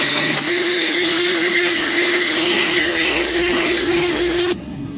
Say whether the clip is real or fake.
fake